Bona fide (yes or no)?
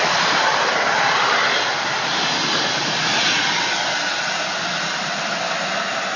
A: yes